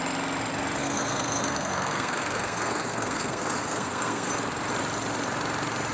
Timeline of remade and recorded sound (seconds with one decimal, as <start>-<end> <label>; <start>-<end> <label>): 0.0-0.8 recorded; 0.8-4.3 remade; 4.3-5.9 recorded

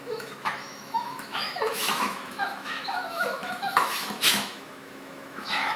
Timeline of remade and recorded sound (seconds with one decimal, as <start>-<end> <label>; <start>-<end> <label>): 0.0-5.8 remade

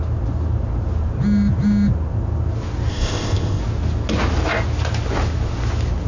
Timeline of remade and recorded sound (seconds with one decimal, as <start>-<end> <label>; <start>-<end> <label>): 0.0-2.9 recorded; 2.9-3.6 remade; 3.6-6.1 recorded

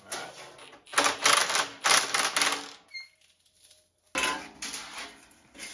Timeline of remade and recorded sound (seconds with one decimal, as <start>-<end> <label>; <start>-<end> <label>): 0.0-5.7 recorded

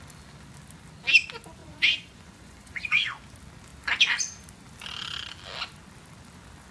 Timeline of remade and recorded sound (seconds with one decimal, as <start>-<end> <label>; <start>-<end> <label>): 0.0-1.6 recorded; 1.6-3.2 remade; 3.2-6.7 recorded

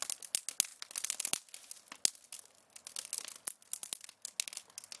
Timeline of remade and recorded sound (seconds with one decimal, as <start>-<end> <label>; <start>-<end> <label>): 0.0-5.0 recorded

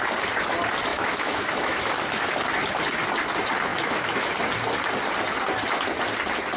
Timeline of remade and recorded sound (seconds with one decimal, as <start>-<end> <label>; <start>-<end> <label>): 0.0-0.9 recorded; 0.9-1.9 remade; 1.9-3.7 recorded; 3.7-4.3 remade; 4.3-6.6 recorded